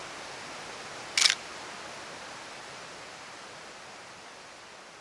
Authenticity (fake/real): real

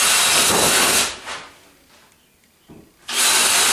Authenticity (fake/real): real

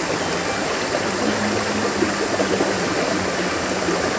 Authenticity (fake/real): real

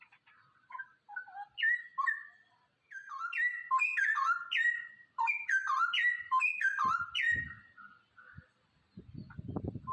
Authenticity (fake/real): real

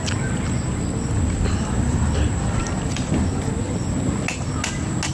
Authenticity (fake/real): real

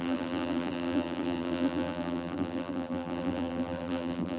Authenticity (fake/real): fake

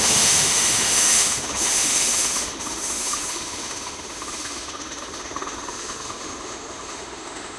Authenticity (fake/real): fake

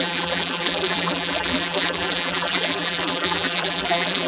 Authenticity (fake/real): fake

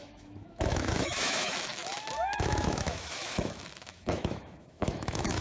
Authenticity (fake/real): fake